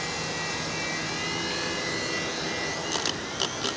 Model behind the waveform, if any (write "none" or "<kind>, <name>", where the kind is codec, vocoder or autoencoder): none